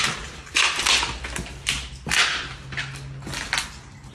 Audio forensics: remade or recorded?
recorded